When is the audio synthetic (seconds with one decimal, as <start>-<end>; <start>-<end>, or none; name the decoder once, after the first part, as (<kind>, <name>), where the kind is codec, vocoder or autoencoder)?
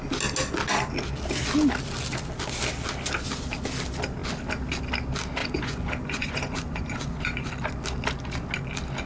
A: 5.4-7.5 (vocoder, Vocos)